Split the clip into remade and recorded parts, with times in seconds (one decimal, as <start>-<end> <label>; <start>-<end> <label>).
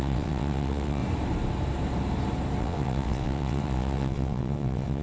0.0-1.0 remade; 1.0-2.6 recorded; 2.6-5.0 remade